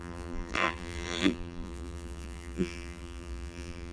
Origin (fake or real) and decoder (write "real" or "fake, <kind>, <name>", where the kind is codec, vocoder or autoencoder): fake, vocoder, BigVGAN v2